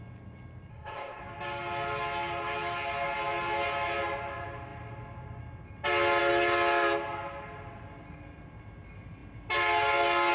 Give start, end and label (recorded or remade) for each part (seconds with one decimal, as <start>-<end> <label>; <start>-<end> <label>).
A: 0.0-0.7 recorded; 0.7-1.2 remade; 1.2-10.3 recorded